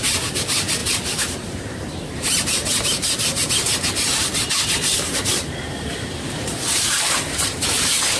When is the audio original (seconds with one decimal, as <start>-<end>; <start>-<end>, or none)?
none